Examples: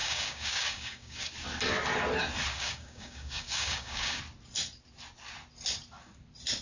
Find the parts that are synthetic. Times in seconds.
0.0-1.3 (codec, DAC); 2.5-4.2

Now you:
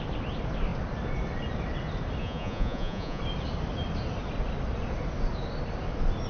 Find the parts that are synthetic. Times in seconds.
2.2-3.2 (vocoder, Vocos)

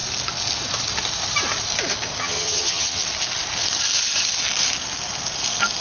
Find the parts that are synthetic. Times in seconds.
2.2-3.0 (vocoder, HiFi-GAN)